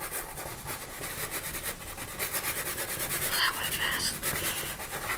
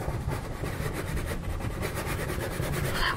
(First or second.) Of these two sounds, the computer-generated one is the second